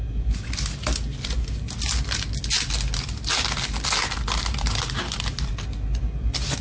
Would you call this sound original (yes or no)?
yes